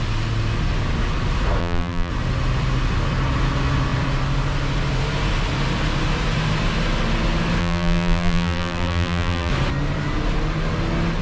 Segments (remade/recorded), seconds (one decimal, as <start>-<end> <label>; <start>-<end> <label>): 0.0-1.6 recorded; 1.6-2.1 remade; 2.1-7.6 recorded; 7.6-9.5 remade; 9.5-11.2 recorded